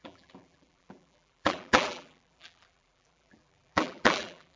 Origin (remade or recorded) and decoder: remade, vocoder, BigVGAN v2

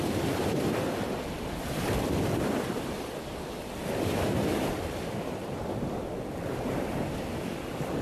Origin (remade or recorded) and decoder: recorded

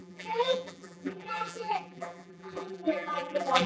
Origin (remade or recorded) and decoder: remade, vocoder, BigVGAN v2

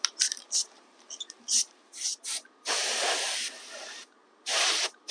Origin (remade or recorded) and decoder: remade, vocoder, BigVGAN v2